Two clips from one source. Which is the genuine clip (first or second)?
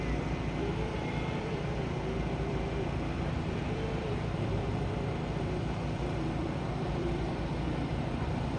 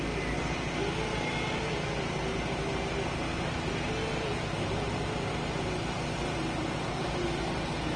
second